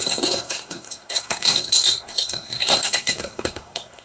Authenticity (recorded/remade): remade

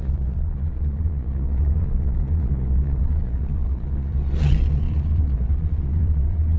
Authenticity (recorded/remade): remade